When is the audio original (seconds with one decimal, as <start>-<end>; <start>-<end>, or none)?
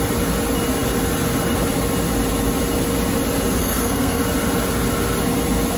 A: 0.0-3.6; 4.2-5.8